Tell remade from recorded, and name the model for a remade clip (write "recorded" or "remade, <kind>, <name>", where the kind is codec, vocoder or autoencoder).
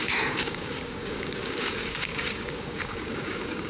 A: remade, codec, DAC